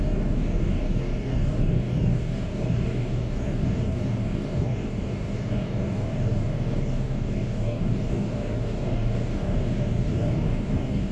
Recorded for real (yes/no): no